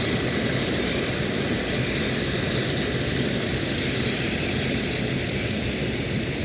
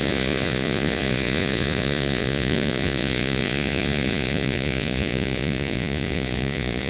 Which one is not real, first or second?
second